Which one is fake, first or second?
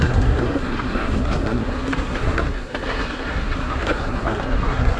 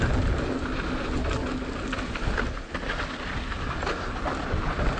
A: first